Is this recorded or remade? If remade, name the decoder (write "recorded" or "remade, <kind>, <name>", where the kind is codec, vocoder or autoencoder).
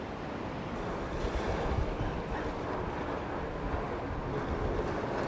recorded